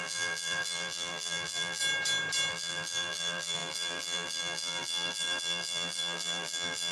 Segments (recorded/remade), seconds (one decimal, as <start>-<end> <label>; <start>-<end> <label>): 0.0-1.8 remade; 1.8-2.5 recorded; 2.5-6.9 remade